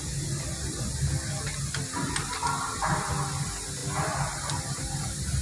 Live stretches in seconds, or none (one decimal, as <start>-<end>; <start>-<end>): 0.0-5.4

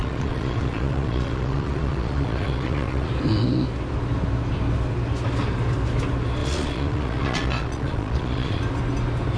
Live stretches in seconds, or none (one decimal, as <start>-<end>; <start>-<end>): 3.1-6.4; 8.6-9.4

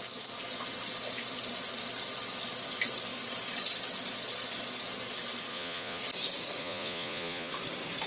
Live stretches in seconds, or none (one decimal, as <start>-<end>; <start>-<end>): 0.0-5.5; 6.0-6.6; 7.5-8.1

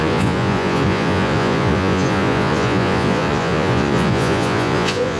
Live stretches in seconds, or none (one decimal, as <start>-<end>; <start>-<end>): none

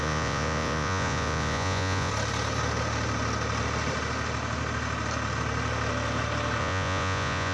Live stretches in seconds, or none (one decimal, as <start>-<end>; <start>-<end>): 2.1-6.6

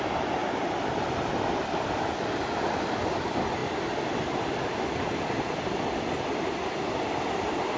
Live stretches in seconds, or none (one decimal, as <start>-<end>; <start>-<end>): 0.0-7.8

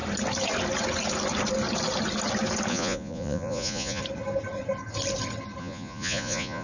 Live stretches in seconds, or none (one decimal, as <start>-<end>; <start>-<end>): 0.0-2.7; 4.0-5.6